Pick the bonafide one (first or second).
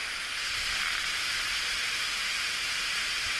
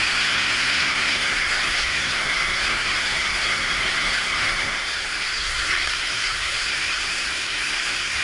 first